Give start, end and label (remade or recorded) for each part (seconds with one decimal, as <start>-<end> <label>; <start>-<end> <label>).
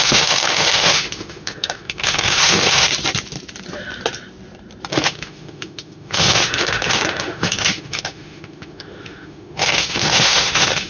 0.0-2.9 remade; 2.9-4.9 recorded; 4.9-10.9 remade